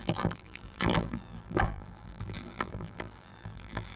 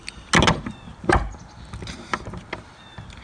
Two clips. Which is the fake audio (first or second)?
first